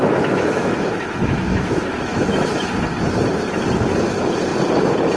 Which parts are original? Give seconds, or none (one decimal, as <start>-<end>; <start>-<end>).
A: 2.6-5.2